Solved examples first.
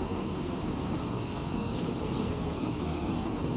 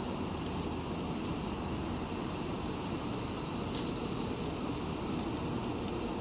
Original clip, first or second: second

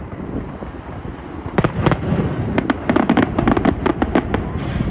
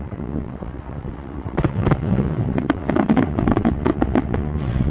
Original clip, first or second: first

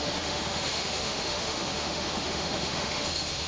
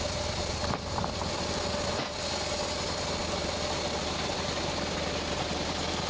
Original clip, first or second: second